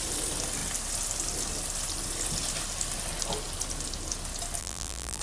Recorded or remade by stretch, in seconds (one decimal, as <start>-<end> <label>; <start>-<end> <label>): 0.0-4.6 recorded; 4.6-5.2 remade